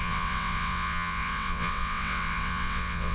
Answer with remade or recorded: remade